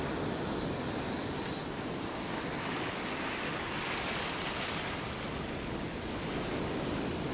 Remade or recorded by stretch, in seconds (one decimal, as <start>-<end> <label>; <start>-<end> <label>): 0.0-7.3 recorded